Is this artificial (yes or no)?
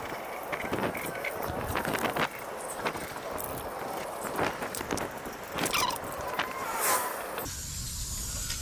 no